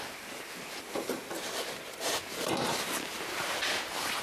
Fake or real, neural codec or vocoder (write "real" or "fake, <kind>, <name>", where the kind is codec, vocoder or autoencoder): real